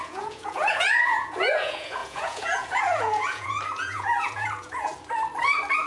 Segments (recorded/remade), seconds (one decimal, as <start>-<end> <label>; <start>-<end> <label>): 0.0-4.9 remade; 4.9-5.9 recorded